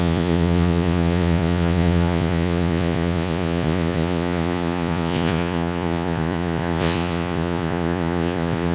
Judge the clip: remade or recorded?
remade